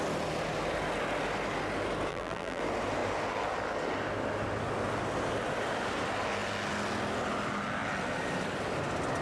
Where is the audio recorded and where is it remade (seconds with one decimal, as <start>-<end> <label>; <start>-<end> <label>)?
0.0-2.1 recorded; 2.1-2.6 remade; 2.6-9.2 recorded